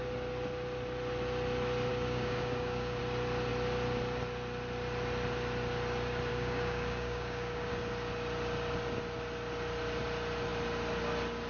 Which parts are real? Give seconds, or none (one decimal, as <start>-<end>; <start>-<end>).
0.0-1.9; 3.0-6.3; 7.7-11.5